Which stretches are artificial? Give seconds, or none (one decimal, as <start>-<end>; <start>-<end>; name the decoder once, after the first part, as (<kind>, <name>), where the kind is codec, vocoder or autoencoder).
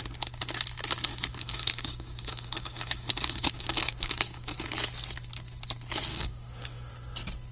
1.1-4.6 (codec, DAC); 6.1-6.9